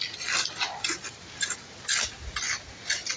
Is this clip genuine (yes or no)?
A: yes